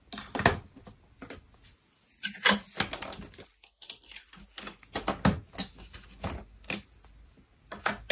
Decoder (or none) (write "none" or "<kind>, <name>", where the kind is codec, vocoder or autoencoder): none